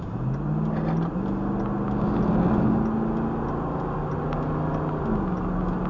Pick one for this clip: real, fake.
real